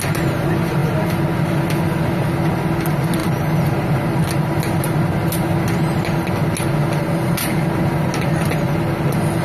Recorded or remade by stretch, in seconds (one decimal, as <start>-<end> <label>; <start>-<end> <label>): 0.0-9.4 recorded